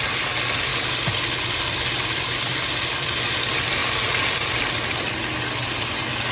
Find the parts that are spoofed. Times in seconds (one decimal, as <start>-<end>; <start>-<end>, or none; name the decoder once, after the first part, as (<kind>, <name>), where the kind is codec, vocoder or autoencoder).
none